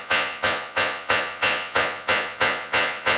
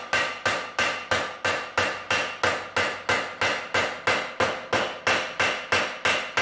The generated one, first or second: first